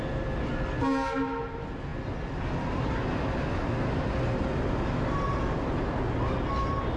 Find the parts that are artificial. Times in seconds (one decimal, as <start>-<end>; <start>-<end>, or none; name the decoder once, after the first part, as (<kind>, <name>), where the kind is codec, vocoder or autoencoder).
none